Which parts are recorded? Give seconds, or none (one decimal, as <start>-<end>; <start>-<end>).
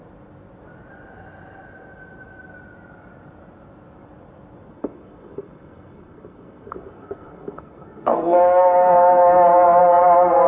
0.0-4.7; 9.8-10.5